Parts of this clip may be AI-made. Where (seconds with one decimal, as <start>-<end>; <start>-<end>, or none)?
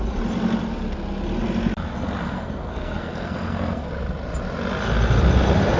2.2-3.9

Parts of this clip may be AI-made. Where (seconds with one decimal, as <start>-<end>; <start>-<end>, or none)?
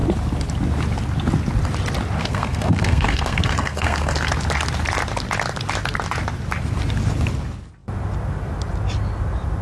2.2-4.3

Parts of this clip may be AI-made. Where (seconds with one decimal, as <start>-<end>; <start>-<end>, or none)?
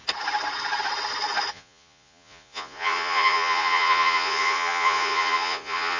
1.5-6.0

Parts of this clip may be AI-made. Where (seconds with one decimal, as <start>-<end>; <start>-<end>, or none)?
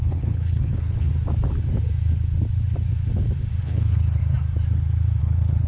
0.0-1.1; 3.6-4.2; 5.2-5.7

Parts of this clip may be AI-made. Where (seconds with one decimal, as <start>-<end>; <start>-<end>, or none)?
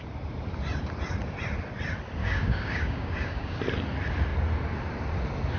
2.2-3.6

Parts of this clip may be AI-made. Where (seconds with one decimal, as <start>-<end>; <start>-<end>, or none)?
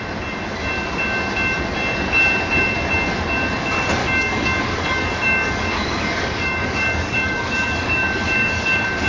4.0-9.1